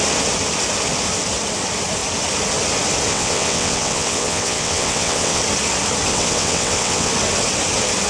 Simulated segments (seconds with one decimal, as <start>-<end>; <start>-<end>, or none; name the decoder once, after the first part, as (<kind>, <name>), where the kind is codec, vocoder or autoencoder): 3.1-5.4 (vocoder, WaveNeXt); 6.1-7.1